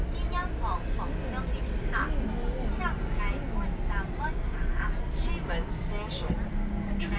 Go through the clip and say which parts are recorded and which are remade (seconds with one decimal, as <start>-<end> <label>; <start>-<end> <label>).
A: 0.0-7.2 recorded